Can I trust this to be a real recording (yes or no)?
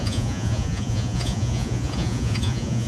no